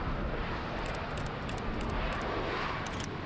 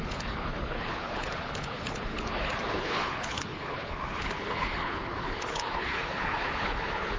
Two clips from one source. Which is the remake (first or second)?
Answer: second